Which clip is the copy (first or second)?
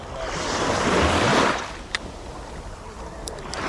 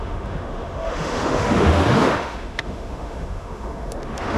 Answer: second